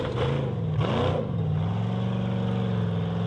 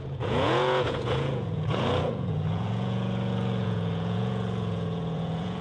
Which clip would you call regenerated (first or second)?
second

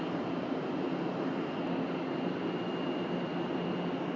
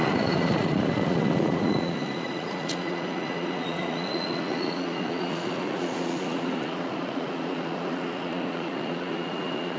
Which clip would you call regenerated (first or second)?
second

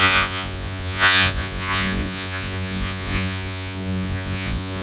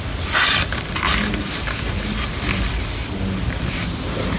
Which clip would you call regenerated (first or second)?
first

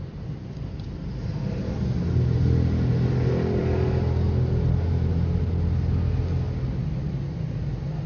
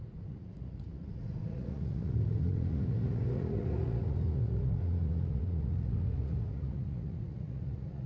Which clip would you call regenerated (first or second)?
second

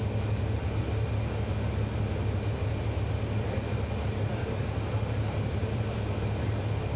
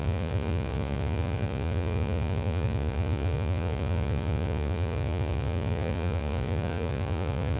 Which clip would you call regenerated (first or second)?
second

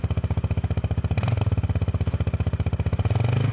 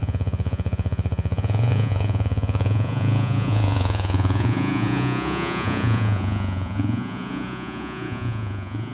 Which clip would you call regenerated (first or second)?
second